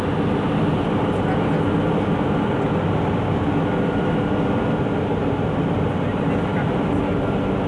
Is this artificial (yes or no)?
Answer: no